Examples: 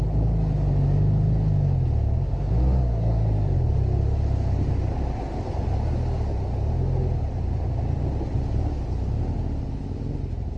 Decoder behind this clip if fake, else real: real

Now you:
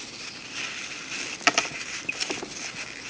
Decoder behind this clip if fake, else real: real